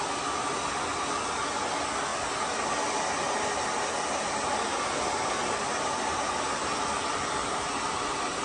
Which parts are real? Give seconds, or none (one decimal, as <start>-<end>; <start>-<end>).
0.0-8.4